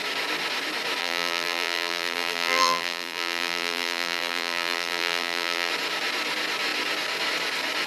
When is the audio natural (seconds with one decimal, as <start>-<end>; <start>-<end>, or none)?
0.0-1.0; 5.7-7.9